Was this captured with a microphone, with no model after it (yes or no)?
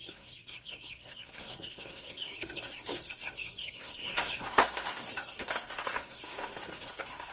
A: no